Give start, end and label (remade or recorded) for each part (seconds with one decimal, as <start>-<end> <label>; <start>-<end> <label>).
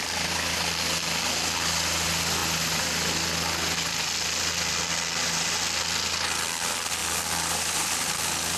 0.0-8.6 recorded